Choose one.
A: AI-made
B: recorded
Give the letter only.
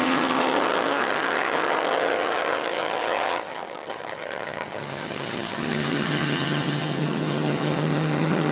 A